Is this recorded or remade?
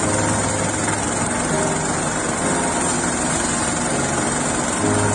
recorded